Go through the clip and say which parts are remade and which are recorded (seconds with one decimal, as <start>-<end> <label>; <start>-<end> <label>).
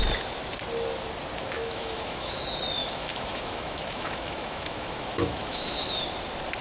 0.0-1.6 recorded; 1.6-2.4 remade; 2.4-2.8 recorded; 2.8-6.0 remade; 6.0-6.6 recorded